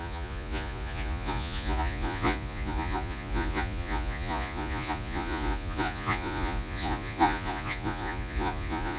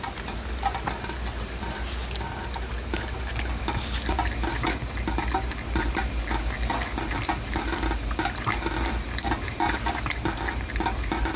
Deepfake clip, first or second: first